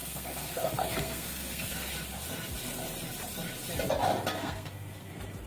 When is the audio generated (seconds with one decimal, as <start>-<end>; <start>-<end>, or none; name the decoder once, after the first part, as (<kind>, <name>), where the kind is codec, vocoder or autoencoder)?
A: 0.0-1.9 (codec, SNAC); 4.4-5.1